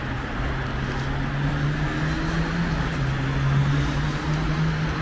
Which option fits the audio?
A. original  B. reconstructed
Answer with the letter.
A